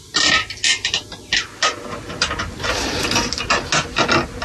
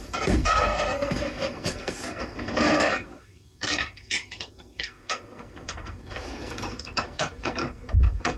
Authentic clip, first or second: first